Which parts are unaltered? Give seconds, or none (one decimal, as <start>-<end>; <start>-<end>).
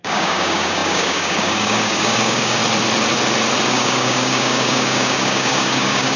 2.6-3.7